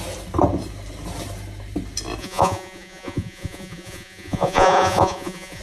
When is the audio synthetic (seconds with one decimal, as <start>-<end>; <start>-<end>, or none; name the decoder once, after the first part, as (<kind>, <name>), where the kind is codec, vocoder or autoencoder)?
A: 2.2-5.6 (vocoder, Vocos)